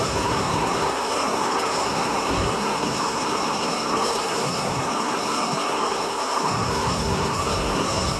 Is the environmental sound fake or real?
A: fake